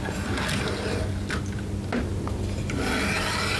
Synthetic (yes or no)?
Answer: no